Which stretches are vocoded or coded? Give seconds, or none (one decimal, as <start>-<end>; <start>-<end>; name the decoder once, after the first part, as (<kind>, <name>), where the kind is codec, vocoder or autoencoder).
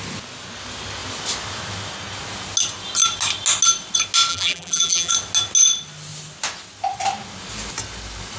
4.3-5.1 (vocoder, BigVGAN v2)